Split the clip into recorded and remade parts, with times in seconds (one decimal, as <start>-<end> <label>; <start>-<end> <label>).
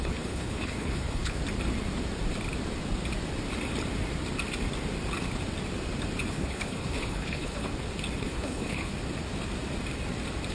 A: 0.0-1.4 remade; 1.4-6.3 recorded; 6.3-7.7 remade; 7.7-8.2 recorded; 8.2-8.9 remade; 8.9-10.5 recorded